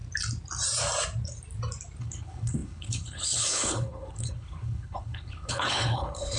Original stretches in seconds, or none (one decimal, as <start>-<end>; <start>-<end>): 0.0-2.0